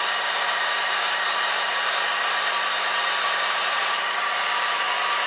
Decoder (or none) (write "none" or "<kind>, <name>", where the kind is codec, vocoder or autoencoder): vocoder, BigVGAN v2